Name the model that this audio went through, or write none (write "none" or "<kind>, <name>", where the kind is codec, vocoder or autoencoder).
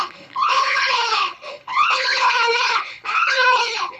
codec, HILCodec